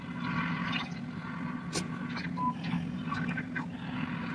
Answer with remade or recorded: recorded